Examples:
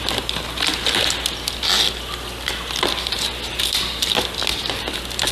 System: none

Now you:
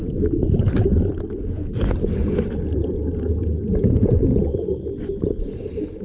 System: none